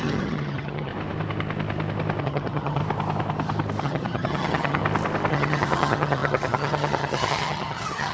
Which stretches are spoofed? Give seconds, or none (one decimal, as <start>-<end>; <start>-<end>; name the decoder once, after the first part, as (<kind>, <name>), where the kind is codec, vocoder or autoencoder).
0.0-0.9 (vocoder, HiFi-GAN); 2.2-2.8; 3.8-4.8; 5.3-8.1

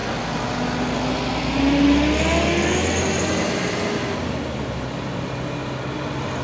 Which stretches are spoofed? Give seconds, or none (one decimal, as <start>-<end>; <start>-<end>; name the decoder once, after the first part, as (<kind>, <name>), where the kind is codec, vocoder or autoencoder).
none

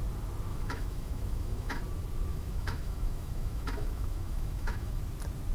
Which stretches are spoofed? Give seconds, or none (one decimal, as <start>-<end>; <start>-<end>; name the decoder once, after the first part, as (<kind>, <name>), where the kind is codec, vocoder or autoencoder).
0.5-1.8 (autoencoder, DAC-VAE); 2.3-5.0